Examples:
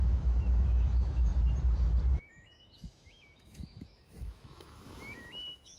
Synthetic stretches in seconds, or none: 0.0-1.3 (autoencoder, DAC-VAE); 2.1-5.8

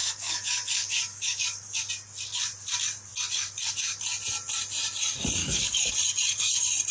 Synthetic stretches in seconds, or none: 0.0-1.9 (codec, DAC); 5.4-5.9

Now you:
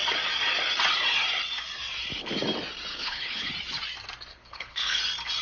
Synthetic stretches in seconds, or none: 2.9-3.5 (codec, HILCodec); 4.3-5.0

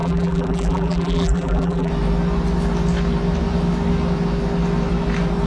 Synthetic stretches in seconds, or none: 0.0-1.9 (vocoder, BigVGAN v2)